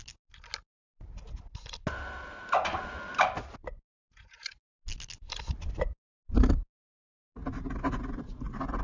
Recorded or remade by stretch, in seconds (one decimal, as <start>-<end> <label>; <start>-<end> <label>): 0.0-8.8 recorded